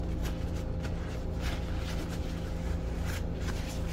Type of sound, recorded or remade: recorded